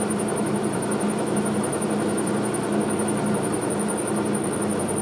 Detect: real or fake real